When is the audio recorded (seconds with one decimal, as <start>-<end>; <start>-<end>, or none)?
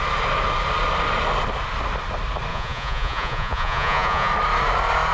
0.0-2.5; 4.3-5.1